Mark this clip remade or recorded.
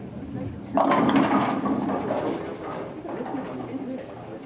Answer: recorded